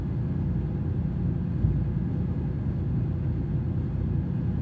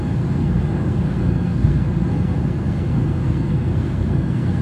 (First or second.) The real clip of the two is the first